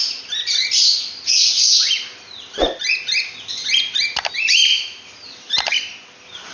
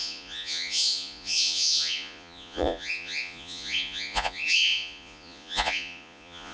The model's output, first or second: second